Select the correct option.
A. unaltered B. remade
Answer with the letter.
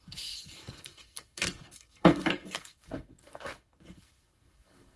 B